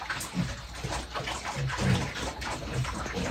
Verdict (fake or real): real